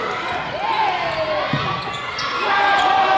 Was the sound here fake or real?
real